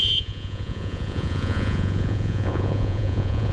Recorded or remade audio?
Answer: remade